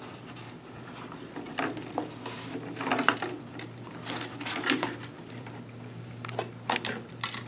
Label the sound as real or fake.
fake